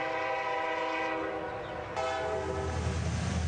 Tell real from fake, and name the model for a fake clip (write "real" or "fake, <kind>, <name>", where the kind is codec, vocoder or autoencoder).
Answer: real